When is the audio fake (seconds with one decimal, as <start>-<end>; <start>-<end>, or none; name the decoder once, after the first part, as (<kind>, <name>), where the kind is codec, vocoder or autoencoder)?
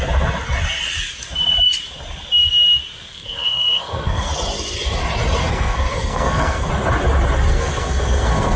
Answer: 3.1-4.3 (codec, SNAC); 5.4-6.7; 7.5-8.6